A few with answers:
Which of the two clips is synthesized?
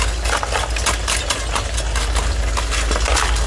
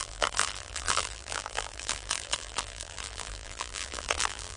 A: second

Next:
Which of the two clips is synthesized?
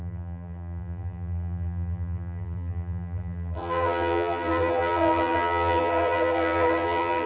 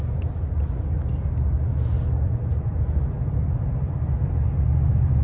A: first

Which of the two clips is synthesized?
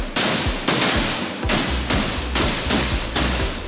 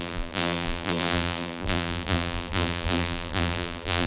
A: second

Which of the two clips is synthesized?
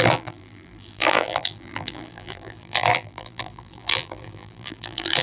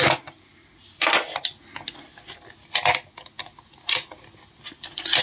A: first